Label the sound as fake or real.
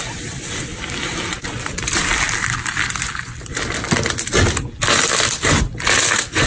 real